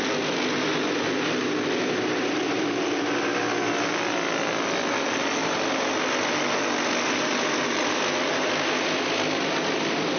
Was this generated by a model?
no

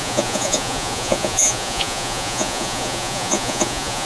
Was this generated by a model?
yes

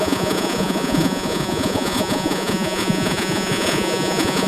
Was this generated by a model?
yes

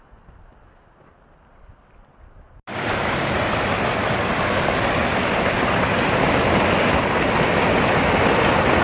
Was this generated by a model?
no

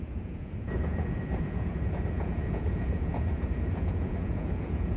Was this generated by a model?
yes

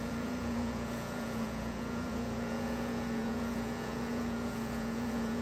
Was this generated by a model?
yes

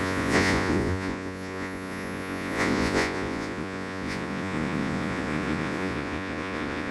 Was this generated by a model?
yes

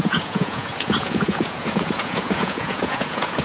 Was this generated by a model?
yes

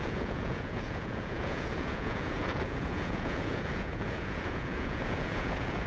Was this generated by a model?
yes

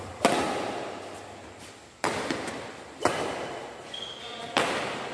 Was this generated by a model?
no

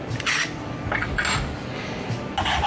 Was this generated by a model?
no